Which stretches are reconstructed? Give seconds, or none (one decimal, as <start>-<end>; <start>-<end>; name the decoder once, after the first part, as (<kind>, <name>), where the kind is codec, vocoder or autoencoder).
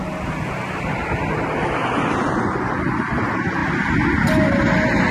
none